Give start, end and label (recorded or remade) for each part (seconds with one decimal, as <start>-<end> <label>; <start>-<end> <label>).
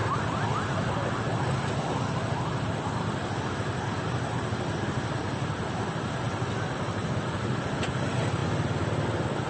0.0-9.5 recorded